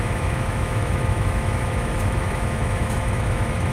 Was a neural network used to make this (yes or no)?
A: yes